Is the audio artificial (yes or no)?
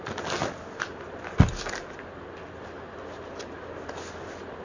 no